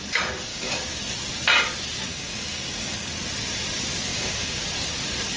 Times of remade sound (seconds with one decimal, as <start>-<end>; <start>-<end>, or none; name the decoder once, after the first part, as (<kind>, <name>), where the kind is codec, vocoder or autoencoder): 0.5-1.0 (codec, DAC); 2.1-3.1; 4.1-4.6